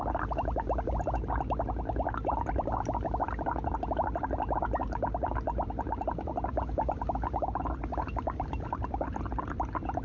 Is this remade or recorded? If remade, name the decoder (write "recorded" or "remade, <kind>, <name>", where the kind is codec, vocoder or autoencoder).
recorded